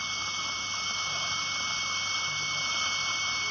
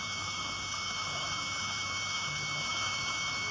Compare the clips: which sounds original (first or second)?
first